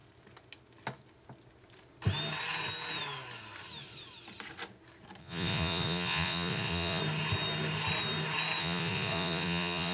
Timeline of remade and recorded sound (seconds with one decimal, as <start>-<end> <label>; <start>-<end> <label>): 0.0-5.2 recorded; 5.2-7.0 remade; 7.0-8.6 recorded; 8.6-9.9 remade